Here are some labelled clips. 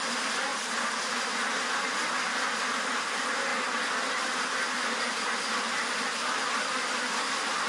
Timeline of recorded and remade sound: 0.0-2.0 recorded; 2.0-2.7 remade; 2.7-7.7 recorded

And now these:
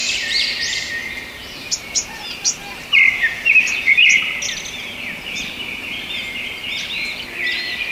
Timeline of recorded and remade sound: 0.0-0.9 remade; 0.9-7.9 recorded

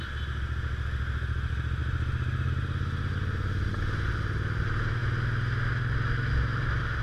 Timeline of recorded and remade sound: 0.0-7.0 recorded

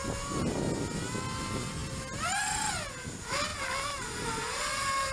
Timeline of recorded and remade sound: 0.0-3.5 recorded; 3.5-4.6 remade; 4.6-5.1 recorded

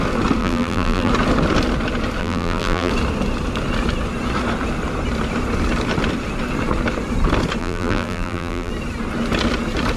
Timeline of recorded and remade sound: 0.0-0.4 recorded; 0.4-1.1 remade; 1.1-2.2 recorded; 2.2-2.9 remade; 2.9-7.6 recorded; 7.6-8.7 remade; 8.7-10.0 recorded

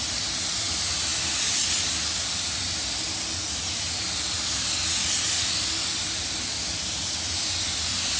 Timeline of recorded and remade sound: 0.0-8.2 recorded

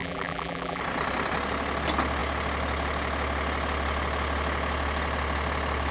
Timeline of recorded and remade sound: 0.0-0.8 remade; 0.8-5.9 recorded

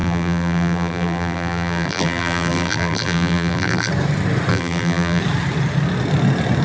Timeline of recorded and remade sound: 0.0-3.9 remade; 3.9-4.5 recorded; 4.5-5.2 remade; 5.2-6.6 recorded